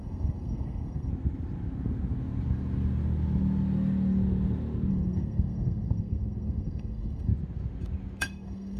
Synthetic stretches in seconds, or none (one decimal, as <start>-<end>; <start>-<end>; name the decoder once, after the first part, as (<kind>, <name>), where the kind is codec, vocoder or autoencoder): 0.0-1.1 (codec, SNAC); 4.9-7.3; 8.2-8.8